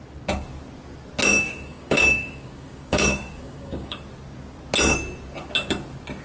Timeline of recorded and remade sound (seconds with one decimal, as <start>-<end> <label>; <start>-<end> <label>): 0.0-1.3 recorded; 1.3-4.0 remade; 4.0-6.2 recorded